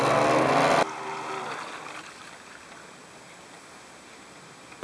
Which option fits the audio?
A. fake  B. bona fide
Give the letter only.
B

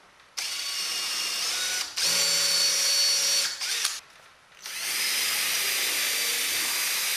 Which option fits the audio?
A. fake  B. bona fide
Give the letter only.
B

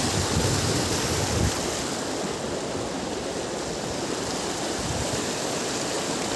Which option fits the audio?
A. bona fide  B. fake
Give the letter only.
A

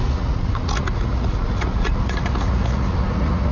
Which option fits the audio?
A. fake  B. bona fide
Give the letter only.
A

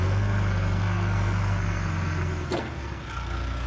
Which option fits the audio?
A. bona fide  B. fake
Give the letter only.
B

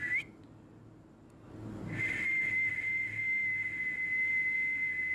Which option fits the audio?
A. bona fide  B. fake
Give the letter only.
A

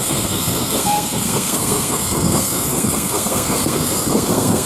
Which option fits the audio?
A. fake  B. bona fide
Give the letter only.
A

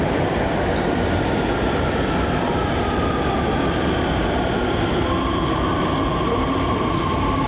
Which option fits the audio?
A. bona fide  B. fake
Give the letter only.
A